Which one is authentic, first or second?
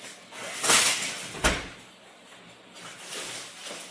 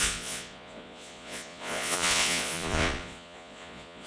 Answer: first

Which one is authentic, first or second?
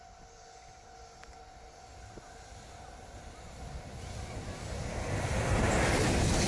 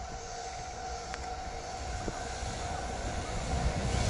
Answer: first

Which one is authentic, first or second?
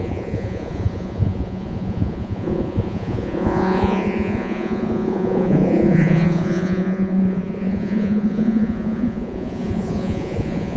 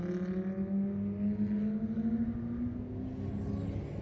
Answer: second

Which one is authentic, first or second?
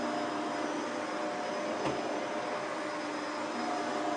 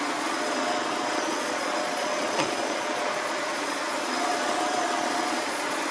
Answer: first